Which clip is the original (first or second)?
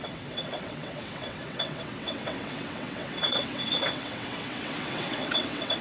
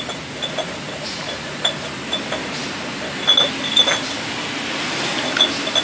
second